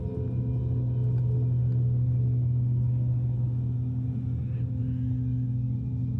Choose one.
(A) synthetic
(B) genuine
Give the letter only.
B